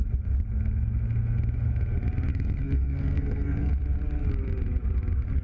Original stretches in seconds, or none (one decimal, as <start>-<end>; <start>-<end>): 0.0-2.3; 3.7-5.4